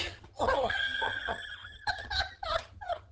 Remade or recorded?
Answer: remade